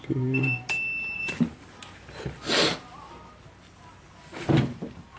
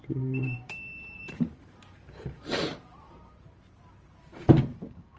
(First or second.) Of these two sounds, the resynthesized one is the second